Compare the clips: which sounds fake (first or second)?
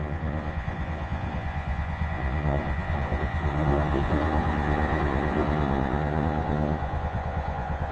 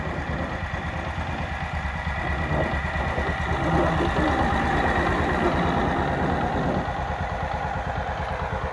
first